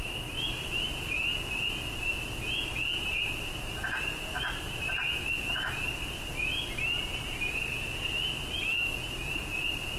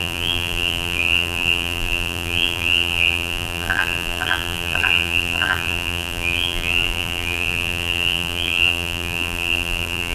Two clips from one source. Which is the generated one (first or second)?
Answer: second